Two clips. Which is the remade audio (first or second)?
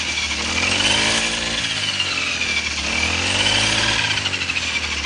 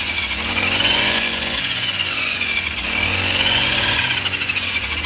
second